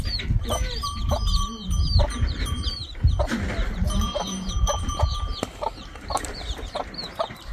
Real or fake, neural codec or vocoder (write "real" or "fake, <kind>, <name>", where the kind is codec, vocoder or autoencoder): fake, vocoder, BigVGAN v2